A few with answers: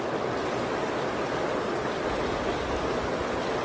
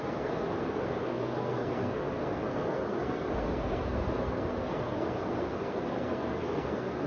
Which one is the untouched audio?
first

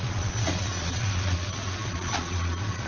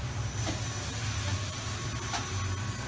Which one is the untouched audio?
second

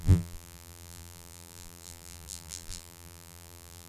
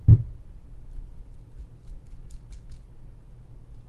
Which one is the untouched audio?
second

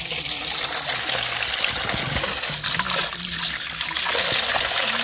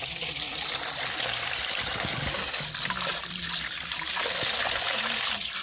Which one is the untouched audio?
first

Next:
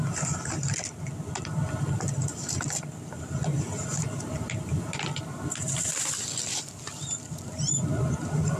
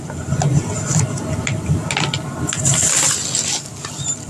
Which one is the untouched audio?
second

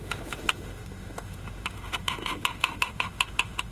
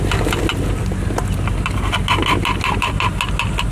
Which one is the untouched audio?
second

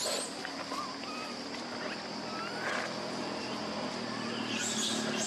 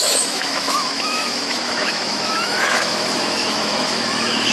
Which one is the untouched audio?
first